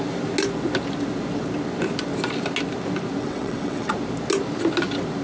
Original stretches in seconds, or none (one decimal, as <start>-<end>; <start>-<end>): 0.0-3.2; 3.9-5.2